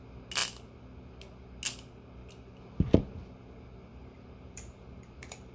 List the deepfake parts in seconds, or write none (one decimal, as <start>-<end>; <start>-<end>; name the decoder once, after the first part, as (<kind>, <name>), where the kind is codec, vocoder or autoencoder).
3.9-5.5 (vocoder, BigVGAN v2)